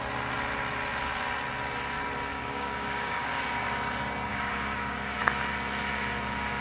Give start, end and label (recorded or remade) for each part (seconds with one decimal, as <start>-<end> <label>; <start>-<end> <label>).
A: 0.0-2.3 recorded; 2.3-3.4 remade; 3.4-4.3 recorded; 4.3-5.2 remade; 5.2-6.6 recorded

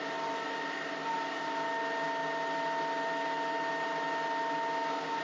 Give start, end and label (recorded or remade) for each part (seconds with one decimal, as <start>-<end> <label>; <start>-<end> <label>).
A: 0.0-5.2 recorded

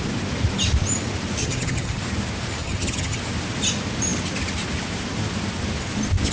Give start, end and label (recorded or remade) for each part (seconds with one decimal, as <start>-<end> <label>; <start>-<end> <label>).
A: 0.0-1.4 recorded; 1.4-2.0 remade; 2.0-2.6 recorded; 2.6-3.2 remade; 3.2-6.3 recorded

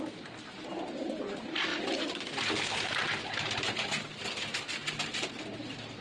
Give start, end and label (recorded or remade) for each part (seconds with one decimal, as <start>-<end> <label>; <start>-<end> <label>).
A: 0.0-6.0 recorded